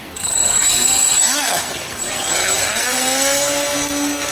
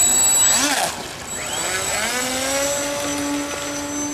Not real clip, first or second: first